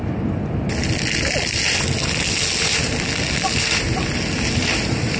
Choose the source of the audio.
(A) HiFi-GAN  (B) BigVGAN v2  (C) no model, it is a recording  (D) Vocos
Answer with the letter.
C